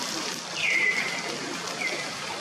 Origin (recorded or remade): remade